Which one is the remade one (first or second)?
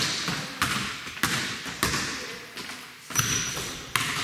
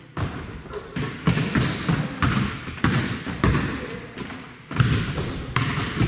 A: second